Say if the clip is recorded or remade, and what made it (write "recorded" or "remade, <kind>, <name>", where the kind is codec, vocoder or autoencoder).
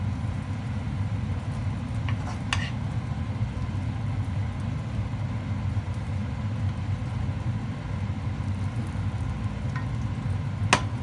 recorded